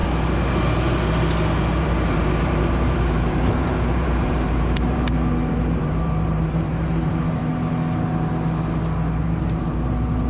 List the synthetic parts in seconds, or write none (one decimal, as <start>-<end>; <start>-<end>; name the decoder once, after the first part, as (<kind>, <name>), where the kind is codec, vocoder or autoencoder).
1.8-7.5 (vocoder, BigVGAN v2); 9.2-10.3